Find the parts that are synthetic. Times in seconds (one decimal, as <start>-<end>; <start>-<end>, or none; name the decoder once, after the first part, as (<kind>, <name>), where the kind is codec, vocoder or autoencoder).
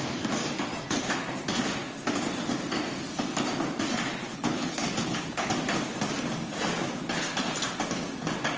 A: 4.3-5.5 (codec, HILCodec)